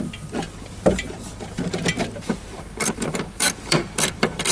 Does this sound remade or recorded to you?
remade